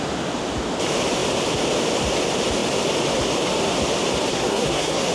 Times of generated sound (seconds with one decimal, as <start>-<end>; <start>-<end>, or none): 4.3-5.1